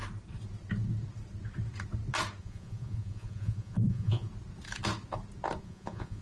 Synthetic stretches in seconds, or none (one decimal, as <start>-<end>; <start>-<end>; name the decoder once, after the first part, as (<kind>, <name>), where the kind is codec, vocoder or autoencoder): 2.4-4.3 (vocoder, Vocos); 5.6-6.2